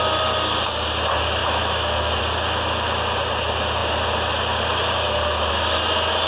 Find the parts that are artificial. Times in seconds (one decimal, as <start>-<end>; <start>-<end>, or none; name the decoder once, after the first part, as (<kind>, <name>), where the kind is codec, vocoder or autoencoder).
1.4-2.2 (autoencoder, DAC-VAE)